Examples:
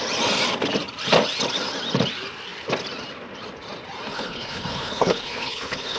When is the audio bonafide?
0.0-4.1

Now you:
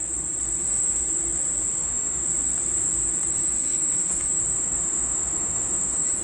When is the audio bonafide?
0.0-0.6; 1.0-1.7; 2.3-3.3

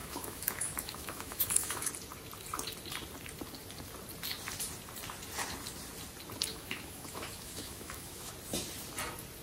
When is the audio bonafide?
1.9-6.5; 8.3-9.4

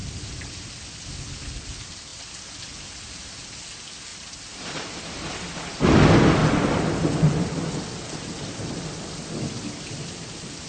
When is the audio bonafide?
0.0-4.1; 5.3-10.7

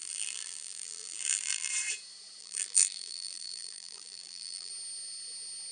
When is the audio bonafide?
1.7-2.4; 4.7-5.7